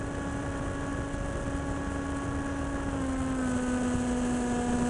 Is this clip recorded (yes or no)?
yes